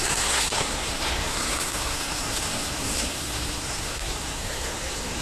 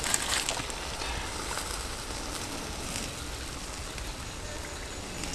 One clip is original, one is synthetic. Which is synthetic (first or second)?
first